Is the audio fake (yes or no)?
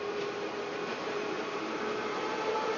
no